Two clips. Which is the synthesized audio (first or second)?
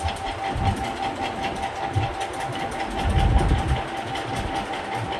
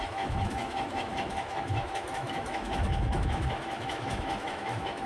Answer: second